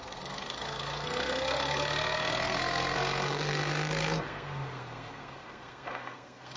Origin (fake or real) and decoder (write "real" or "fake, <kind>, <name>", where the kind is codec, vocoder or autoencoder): fake, codec, SNAC